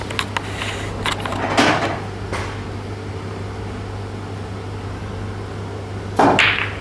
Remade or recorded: recorded